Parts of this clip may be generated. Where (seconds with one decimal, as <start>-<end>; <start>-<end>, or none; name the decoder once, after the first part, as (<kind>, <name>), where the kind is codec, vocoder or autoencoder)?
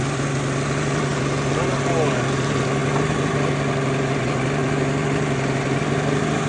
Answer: none